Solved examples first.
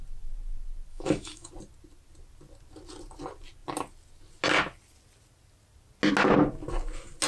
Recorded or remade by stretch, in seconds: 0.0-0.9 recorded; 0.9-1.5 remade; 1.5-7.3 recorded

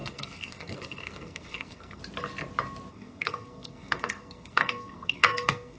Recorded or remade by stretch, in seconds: 0.0-2.0 remade; 2.0-2.9 recorded; 2.9-5.8 remade

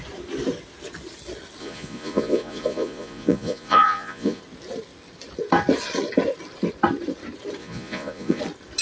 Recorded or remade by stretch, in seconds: 0.0-1.6 recorded; 1.6-4.4 remade; 4.4-7.6 recorded; 7.6-8.4 remade; 8.4-8.8 recorded

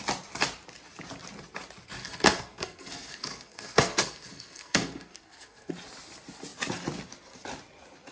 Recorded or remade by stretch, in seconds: 0.0-2.0 recorded; 2.0-5.7 remade; 5.7-8.1 recorded